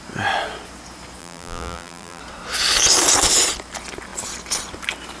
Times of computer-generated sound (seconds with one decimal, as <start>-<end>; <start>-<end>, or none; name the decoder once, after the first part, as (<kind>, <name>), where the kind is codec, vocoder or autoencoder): 1.2-2.2 (vocoder, BigVGAN v2)